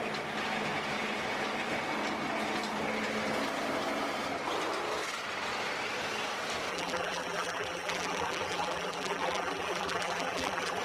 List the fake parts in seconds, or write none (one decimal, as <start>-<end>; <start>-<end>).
6.7-10.8